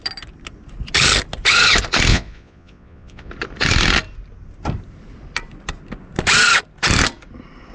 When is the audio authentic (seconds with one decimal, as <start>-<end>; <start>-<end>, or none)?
0.0-2.1; 3.3-7.7